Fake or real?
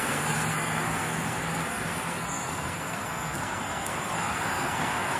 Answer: fake